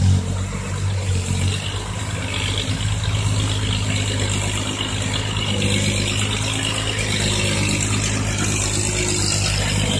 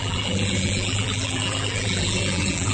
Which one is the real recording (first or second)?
first